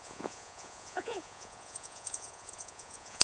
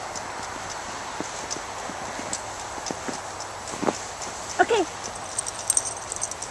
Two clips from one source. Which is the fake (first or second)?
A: first